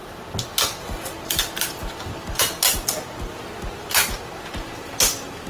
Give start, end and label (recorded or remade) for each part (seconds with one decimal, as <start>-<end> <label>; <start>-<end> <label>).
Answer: 0.0-5.5 recorded